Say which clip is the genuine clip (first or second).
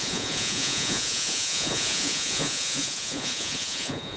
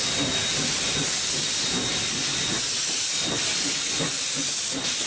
second